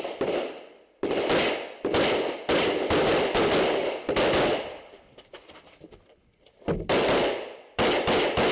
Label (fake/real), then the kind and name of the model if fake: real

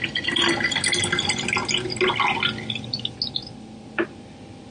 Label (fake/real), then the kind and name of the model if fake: real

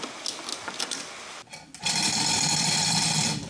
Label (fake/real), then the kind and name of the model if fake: real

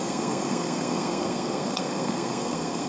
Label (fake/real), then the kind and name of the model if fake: fake, codec, SNAC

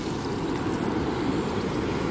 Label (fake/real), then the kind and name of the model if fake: real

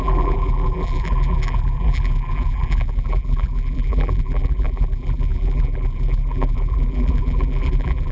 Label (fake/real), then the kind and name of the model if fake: fake, vocoder, BigVGAN v2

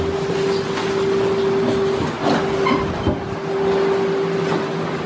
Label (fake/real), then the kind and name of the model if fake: real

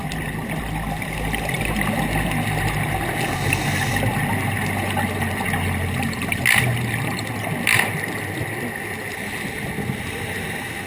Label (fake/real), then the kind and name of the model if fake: real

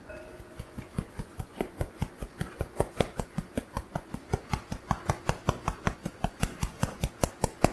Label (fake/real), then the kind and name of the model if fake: fake, vocoder, Vocos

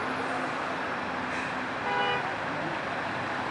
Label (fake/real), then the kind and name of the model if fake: real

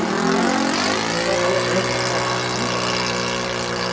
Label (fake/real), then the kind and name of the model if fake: real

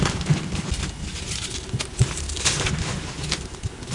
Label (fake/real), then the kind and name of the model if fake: real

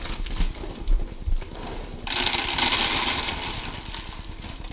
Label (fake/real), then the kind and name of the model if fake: real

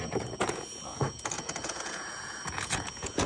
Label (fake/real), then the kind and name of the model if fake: fake, vocoder, Vocos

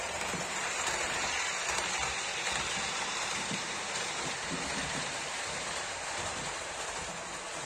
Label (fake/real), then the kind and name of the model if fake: fake, vocoder, BigVGAN v2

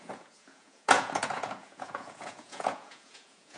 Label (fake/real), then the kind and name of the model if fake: fake, vocoder, Vocos